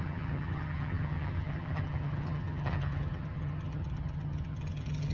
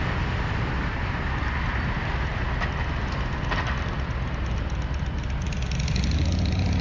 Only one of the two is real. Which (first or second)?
second